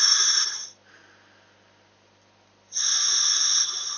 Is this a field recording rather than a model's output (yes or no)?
yes